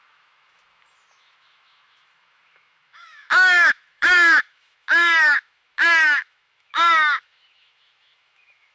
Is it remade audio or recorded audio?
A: remade